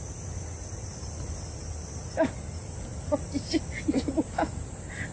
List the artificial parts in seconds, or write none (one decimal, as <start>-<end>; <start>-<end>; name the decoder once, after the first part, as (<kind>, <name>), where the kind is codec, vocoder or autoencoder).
none